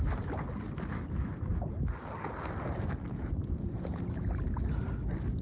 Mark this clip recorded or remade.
recorded